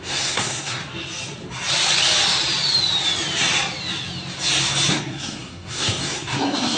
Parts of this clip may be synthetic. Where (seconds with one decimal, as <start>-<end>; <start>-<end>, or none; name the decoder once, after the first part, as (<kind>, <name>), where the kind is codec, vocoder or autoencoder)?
0.0-0.8 (codec, SNAC); 4.9-6.8